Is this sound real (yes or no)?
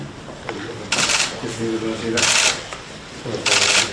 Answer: yes